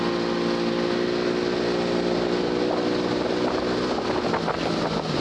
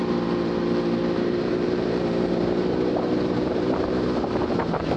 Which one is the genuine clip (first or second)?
first